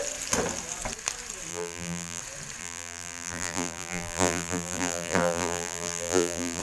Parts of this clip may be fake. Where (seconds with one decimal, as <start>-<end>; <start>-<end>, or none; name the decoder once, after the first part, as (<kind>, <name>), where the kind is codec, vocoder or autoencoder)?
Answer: 1.5-2.2 (vocoder, BigVGAN v2); 2.6-6.6